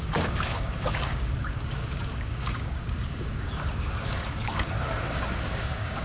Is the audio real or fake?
fake